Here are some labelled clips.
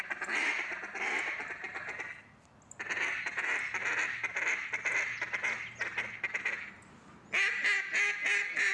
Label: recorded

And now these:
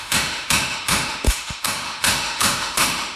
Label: remade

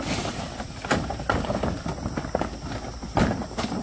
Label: recorded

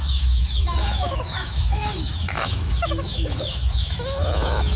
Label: remade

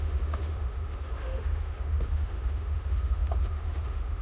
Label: remade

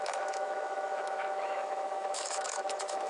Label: remade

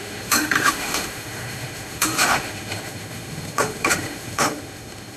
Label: remade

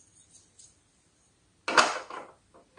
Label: recorded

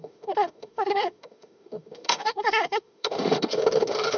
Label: remade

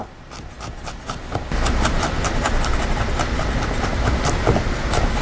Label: recorded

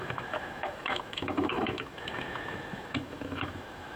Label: remade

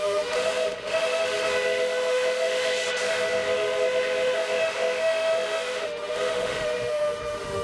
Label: remade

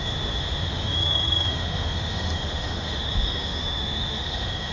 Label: remade